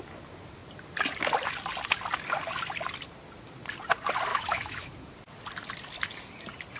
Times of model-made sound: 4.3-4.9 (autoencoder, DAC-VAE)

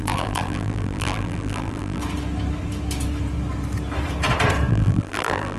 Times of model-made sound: 0.0-2.0 (vocoder, BigVGAN v2); 4.7-5.6

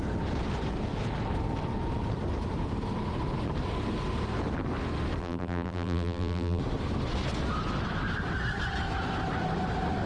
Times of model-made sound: 5.2-6.6 (vocoder, BigVGAN v2)

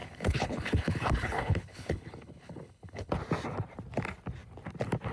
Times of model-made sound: 0.0-3.1 (codec, HILCodec)